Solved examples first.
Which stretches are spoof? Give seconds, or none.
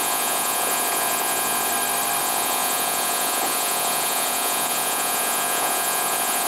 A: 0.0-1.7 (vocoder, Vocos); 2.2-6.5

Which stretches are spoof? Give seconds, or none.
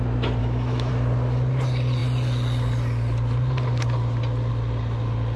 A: 0.4-0.9 (autoencoder, DAC-VAE)